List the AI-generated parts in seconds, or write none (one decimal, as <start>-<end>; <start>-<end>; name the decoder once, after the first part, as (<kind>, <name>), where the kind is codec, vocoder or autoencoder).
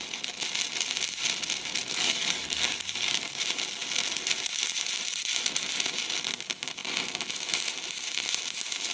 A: 1.8-3.4 (codec, DAC)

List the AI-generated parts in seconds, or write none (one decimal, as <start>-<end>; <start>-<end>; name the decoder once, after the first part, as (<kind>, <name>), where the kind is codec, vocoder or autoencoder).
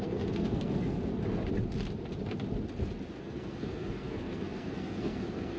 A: 0.0-1.1 (codec, SNAC); 3.2-5.6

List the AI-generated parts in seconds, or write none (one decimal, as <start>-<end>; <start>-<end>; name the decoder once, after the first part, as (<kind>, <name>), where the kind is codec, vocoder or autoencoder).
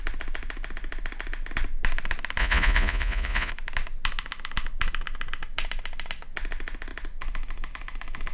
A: 2.4-3.5 (vocoder, Vocos)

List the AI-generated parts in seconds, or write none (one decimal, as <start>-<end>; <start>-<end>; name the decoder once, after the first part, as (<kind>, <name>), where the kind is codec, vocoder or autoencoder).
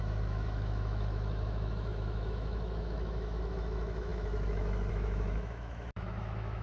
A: 0.0-6.6 (autoencoder, DAC-VAE)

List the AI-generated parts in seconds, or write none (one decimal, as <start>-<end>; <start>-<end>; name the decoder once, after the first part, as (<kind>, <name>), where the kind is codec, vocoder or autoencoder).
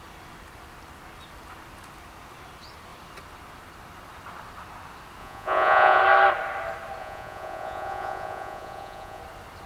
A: 5.2-6.0 (vocoder, Vocos); 7.0-9.2